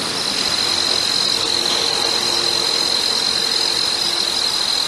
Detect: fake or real real